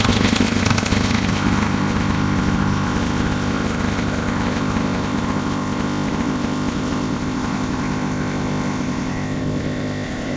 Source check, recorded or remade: remade